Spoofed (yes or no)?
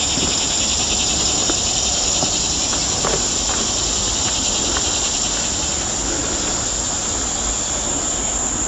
no